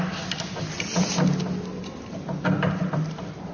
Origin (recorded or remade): recorded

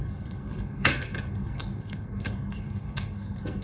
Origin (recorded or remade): remade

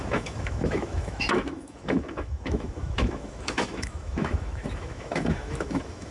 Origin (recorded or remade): remade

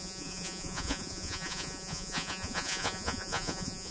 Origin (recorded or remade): remade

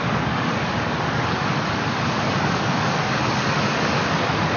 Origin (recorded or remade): remade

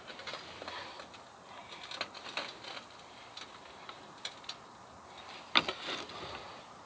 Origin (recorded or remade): recorded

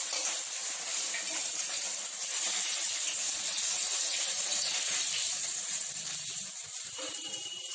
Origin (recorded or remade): remade